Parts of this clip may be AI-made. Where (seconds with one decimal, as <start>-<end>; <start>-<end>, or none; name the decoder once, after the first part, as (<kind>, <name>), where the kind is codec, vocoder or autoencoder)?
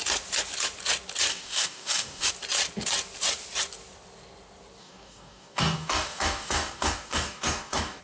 1.3-2.3 (codec, DAC); 4.8-8.0